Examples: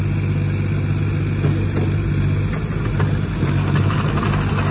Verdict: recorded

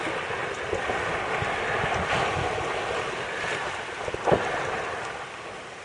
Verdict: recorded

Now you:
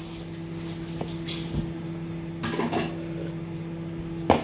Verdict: recorded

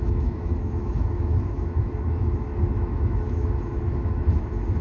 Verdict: remade